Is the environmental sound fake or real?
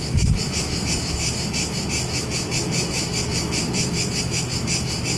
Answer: fake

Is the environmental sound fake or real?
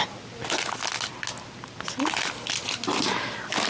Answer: real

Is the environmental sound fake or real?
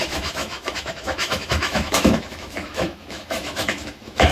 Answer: fake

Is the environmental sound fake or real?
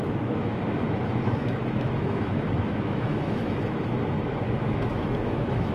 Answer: fake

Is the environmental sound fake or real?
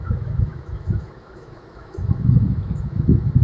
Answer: fake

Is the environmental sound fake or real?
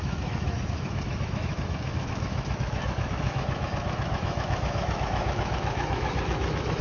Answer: fake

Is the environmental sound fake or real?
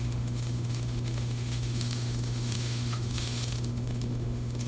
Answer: fake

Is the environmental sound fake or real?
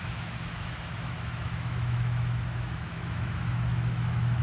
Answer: fake